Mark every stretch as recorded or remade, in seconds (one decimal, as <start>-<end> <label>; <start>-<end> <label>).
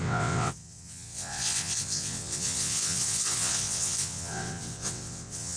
0.0-5.6 remade